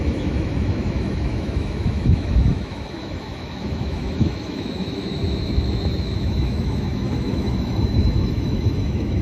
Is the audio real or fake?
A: fake